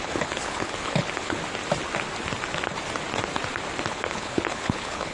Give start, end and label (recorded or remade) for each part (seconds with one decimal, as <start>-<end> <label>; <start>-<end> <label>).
0.0-1.4 remade; 1.4-3.9 recorded; 3.9-5.1 remade